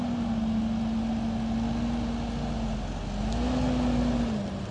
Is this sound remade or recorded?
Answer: recorded